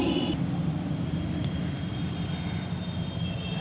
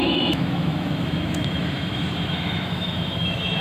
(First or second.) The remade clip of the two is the second